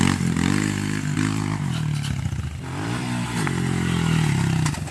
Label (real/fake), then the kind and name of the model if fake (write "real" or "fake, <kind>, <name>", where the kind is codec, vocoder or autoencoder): real